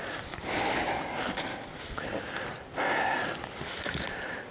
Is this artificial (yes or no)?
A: no